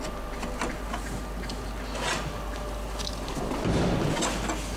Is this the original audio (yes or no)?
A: yes